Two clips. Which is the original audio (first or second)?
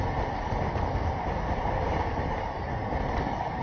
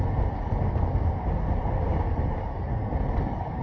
second